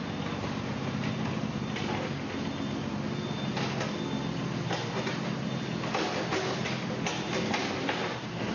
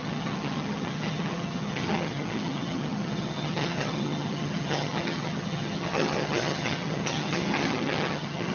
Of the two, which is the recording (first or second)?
first